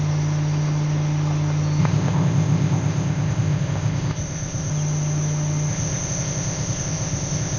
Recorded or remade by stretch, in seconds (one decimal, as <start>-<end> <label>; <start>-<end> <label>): 0.0-1.8 recorded; 1.8-4.7 remade; 4.7-5.7 recorded; 5.7-7.6 remade